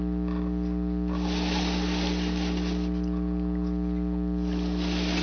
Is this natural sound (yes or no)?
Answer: yes